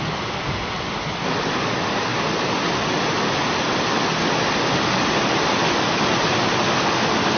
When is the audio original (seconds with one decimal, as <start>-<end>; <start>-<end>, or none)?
0.0-7.4